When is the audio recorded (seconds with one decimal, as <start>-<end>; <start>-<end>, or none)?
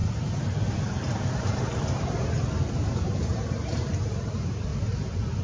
4.7-5.4